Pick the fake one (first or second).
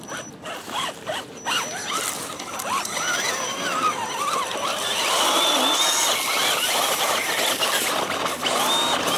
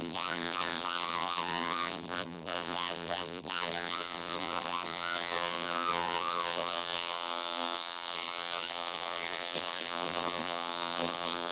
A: second